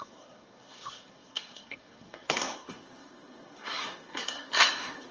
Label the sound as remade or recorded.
remade